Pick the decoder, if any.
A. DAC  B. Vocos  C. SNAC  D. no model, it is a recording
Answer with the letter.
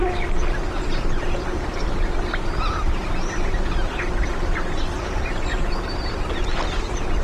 D